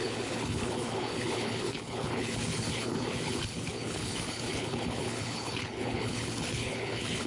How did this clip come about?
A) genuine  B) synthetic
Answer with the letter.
B